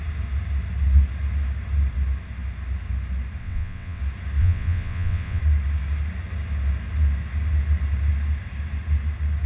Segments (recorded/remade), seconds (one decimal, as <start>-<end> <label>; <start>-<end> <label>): 0.0-3.4 recorded; 3.4-4.0 remade; 4.0-4.4 recorded; 4.4-5.4 remade; 5.4-9.5 recorded